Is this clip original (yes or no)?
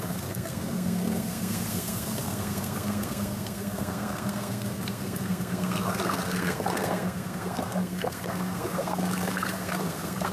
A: no